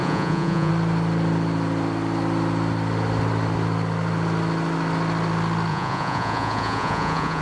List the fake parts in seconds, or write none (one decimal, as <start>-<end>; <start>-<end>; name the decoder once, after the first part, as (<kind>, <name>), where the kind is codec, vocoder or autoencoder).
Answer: 0.0-0.7 (vocoder, Vocos); 5.7-7.4